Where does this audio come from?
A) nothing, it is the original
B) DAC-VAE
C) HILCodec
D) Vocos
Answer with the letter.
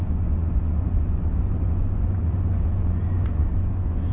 D